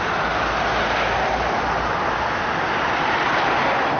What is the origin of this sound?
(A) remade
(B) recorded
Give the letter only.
B